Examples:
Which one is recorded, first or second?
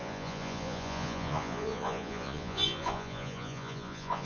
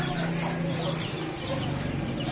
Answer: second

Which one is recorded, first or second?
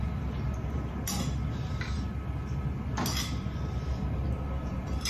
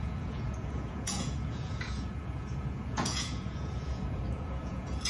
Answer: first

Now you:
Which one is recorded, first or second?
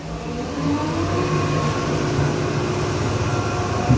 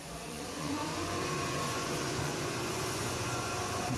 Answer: first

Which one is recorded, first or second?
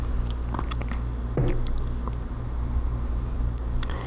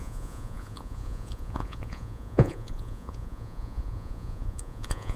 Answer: first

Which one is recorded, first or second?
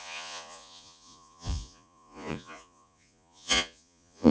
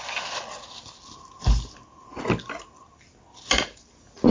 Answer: second